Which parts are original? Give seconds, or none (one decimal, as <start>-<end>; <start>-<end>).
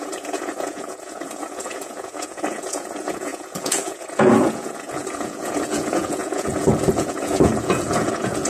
none